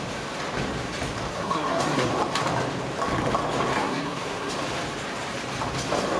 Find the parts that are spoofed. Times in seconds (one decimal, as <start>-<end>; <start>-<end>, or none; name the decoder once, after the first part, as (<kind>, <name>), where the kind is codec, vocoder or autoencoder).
1.3-2.1 (codec, SNAC); 3.7-4.5